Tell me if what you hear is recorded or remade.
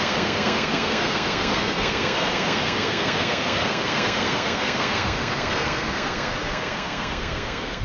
remade